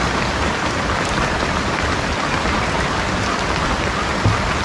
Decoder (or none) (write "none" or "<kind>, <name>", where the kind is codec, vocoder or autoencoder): none